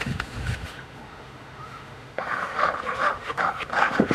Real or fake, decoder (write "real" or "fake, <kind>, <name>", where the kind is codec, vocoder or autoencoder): fake, autoencoder, DAC-VAE